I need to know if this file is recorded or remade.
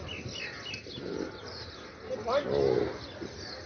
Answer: recorded